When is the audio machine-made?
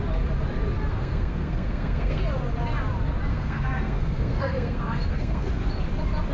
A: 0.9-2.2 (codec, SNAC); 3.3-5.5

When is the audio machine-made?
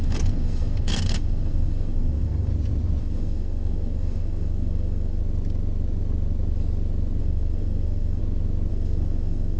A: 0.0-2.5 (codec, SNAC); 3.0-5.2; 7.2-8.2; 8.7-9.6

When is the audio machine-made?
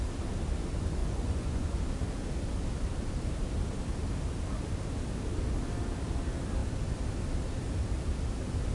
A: 1.0-1.8 (vocoder, Vocos)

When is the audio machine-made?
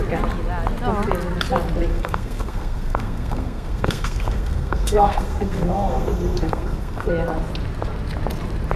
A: 1.9-7.1 (codec, SNAC)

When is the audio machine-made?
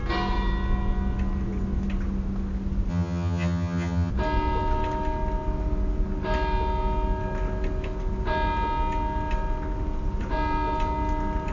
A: 2.9-4.1 (vocoder, HiFi-GAN)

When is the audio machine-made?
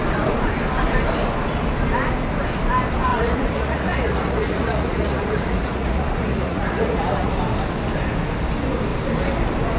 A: 3.1-7.3 (vocoder, Vocos)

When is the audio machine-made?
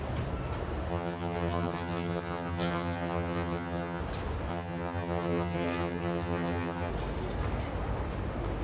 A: 0.9-4.0 (vocoder, HiFi-GAN); 4.5-6.9